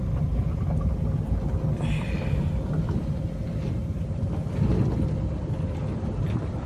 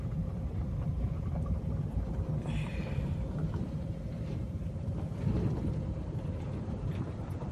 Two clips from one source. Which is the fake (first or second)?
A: second